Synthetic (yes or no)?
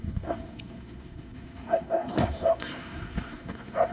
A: yes